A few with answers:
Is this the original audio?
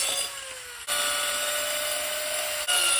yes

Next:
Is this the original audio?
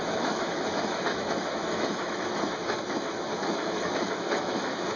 no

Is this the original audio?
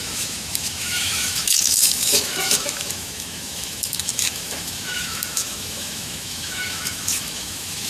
no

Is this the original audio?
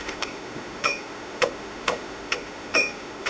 no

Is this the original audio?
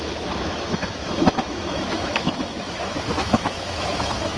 no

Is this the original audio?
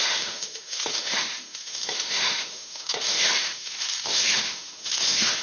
no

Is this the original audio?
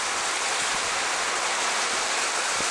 yes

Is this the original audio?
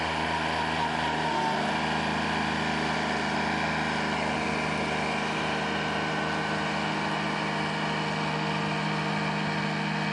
yes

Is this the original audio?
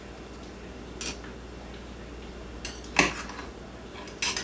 yes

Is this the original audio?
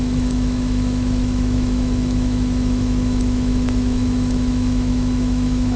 no